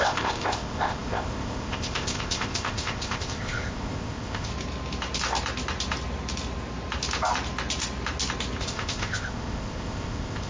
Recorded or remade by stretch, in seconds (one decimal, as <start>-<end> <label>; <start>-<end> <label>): 0.0-4.5 remade; 4.5-8.6 recorded; 8.6-10.5 remade